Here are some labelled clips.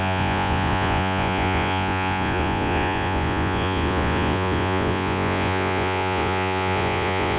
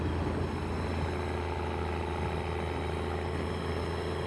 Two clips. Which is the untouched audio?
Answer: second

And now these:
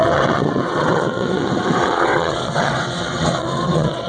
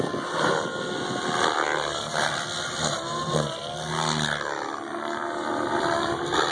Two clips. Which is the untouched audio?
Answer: second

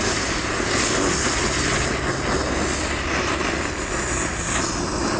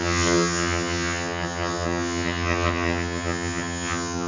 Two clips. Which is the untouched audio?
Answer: first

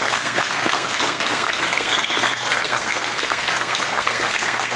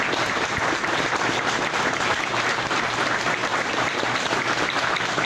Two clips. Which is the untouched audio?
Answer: second